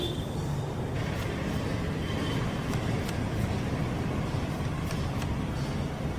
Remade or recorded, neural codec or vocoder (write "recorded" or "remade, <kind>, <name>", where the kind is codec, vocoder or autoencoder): remade, vocoder, BigVGAN v2